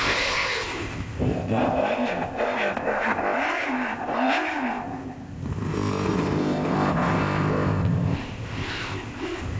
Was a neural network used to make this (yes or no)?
yes